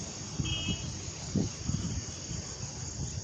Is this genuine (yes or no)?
yes